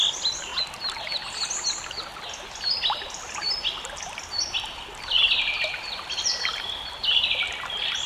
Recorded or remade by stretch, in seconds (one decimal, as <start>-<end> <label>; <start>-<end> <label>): 0.0-0.5 remade; 0.5-3.1 recorded; 3.1-8.1 remade